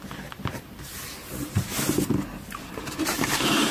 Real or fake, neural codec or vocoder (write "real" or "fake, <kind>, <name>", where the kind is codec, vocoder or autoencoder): fake, vocoder, BigVGAN v2